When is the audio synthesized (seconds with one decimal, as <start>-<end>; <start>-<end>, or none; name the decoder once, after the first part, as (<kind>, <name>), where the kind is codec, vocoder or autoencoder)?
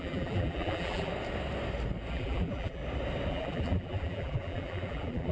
0.0-1.1 (vocoder, BigVGAN v2); 2.1-2.8; 3.3-5.3